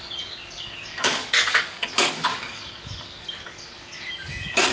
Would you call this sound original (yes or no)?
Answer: no